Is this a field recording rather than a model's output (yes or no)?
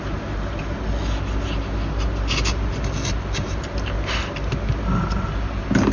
yes